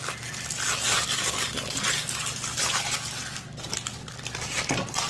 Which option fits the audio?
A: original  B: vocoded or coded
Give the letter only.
A